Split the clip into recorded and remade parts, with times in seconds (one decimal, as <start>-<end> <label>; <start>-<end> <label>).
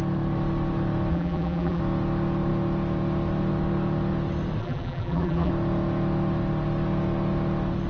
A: 0.0-1.1 recorded; 1.1-1.8 remade; 1.8-4.6 recorded; 4.6-5.5 remade; 5.5-7.9 recorded